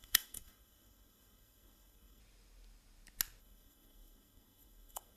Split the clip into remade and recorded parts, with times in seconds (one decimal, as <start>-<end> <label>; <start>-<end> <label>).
0.0-2.2 remade; 2.2-3.4 recorded; 3.4-5.2 remade